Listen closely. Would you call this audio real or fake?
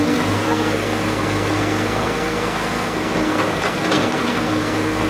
fake